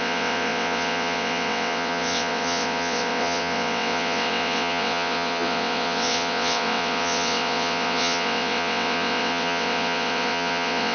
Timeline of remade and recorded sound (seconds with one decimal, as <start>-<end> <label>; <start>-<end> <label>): 0.0-10.9 remade

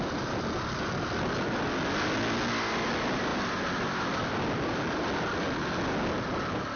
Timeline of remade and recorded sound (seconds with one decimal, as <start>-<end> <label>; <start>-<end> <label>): 0.0-6.8 recorded

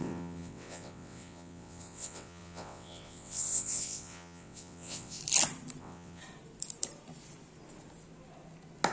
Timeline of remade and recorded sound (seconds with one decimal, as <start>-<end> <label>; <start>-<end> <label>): 0.0-5.2 remade; 5.2-5.8 recorded; 5.8-6.2 remade; 6.2-8.9 recorded